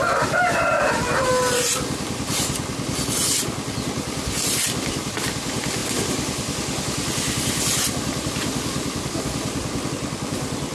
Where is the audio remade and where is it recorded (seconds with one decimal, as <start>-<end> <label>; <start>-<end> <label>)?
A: 0.0-10.7 recorded